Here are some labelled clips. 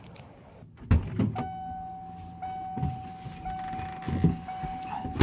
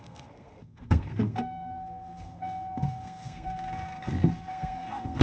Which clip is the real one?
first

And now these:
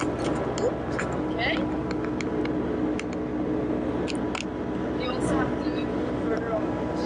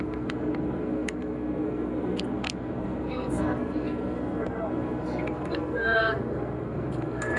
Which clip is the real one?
first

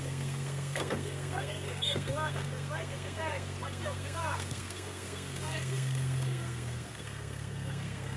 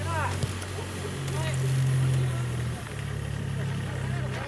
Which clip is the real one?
second